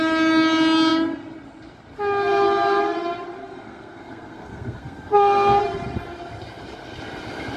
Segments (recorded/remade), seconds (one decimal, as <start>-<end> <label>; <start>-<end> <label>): 0.0-3.4 recorded; 3.4-5.6 remade; 5.6-7.6 recorded

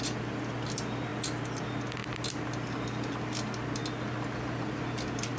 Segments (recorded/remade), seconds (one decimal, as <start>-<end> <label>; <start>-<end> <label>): 0.0-5.4 recorded

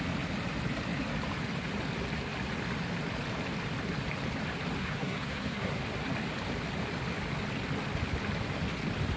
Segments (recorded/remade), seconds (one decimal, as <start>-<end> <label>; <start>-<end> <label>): 0.0-4.8 recorded; 4.8-5.8 remade; 5.8-9.2 recorded